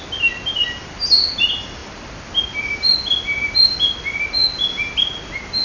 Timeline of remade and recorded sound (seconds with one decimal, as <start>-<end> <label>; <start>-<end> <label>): 0.0-5.6 recorded